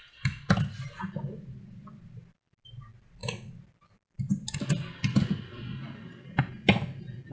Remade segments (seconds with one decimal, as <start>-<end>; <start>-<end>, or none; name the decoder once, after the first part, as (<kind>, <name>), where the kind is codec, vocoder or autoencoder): none